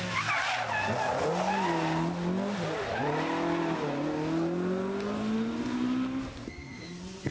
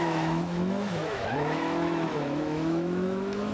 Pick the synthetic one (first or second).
second